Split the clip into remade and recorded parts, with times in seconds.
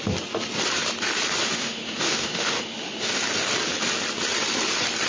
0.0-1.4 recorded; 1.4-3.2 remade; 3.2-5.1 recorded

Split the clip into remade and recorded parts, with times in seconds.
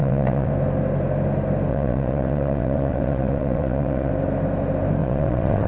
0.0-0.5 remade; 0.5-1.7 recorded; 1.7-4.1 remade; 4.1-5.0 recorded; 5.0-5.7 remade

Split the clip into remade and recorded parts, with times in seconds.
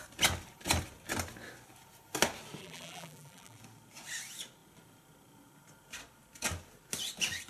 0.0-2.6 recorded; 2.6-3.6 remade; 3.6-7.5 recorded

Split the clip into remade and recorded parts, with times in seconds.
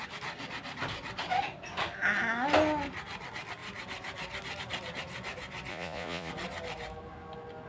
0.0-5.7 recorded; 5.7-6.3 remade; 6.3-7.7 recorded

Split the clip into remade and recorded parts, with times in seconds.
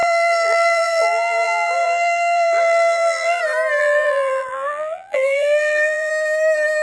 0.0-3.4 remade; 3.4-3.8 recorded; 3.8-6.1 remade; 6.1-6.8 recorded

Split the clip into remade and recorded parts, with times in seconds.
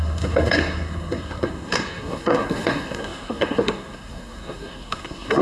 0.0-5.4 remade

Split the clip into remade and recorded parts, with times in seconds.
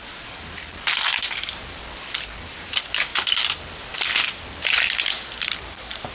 0.0-6.1 recorded